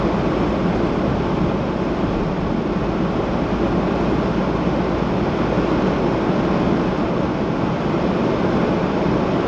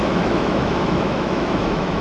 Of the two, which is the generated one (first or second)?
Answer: second